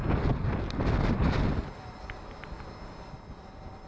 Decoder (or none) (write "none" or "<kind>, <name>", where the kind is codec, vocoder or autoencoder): none